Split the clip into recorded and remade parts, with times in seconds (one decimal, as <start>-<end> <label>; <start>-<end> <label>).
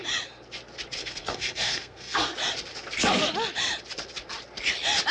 0.0-1.0 recorded; 1.0-2.3 remade; 2.3-5.1 recorded